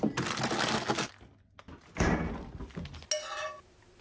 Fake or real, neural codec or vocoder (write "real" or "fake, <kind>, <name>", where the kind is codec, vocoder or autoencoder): real